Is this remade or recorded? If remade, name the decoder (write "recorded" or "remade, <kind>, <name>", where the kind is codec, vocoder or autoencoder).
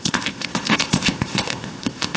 remade, codec, ZipCodec